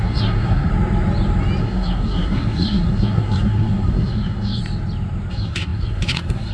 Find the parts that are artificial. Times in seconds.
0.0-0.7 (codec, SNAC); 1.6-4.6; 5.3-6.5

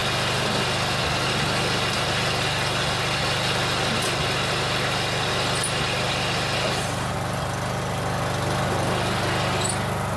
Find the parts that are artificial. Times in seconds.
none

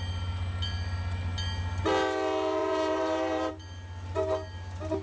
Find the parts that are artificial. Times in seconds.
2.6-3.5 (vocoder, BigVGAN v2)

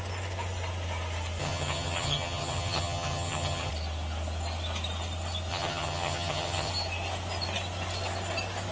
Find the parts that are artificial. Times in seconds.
1.4-3.7 (vocoder, HiFi-GAN); 5.5-6.7

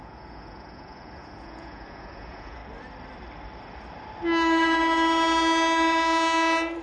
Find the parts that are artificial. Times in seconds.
0.0-2.6 (vocoder, Vocos)

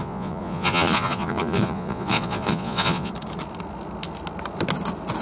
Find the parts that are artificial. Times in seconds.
0.0-3.1 (vocoder, Vocos)